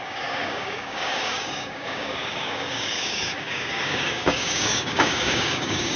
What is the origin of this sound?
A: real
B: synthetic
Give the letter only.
B